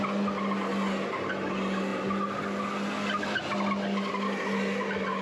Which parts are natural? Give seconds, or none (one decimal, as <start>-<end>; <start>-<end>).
0.0-5.2